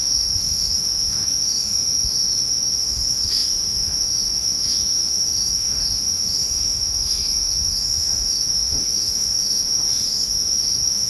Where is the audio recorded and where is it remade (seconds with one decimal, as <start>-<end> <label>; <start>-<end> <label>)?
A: 0.0-11.1 remade